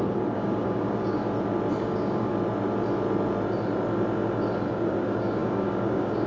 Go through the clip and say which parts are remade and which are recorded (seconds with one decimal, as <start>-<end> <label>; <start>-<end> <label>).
0.0-1.2 remade; 1.2-1.7 recorded; 1.7-2.3 remade; 2.3-4.7 recorded; 4.7-6.3 remade